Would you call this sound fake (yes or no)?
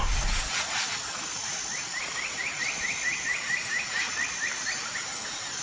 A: no